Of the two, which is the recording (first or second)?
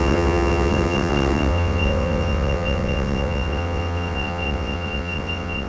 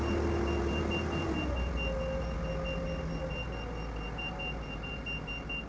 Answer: second